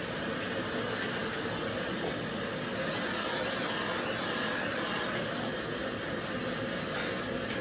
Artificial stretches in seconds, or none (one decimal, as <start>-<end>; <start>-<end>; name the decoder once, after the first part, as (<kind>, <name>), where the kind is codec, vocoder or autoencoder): none